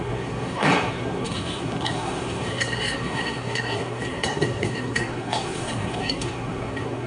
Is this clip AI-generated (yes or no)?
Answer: yes